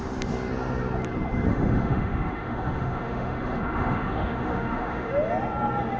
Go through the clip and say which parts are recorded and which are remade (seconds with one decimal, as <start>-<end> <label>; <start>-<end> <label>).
0.0-1.5 recorded; 1.5-5.1 remade; 5.1-6.0 recorded